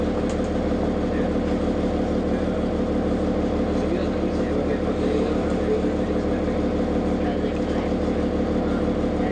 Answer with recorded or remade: recorded